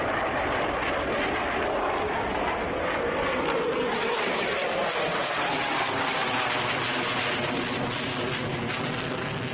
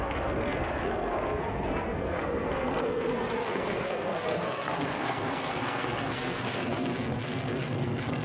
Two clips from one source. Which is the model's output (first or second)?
second